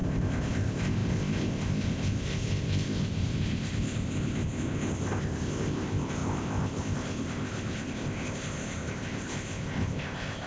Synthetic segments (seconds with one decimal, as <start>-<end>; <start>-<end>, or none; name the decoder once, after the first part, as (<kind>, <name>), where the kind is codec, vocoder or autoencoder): 0.0-10.5 (codec, ZipCodec)